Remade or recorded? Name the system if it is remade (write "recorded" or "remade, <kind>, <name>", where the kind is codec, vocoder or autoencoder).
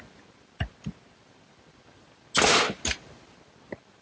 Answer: recorded